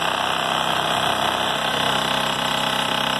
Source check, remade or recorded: recorded